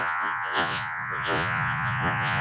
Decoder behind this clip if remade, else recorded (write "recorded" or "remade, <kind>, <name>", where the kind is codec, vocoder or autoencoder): remade, vocoder, Vocos